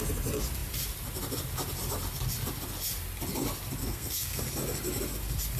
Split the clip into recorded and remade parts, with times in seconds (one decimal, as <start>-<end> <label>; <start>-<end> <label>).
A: 0.0-3.8 recorded; 3.8-4.4 remade; 4.4-5.6 recorded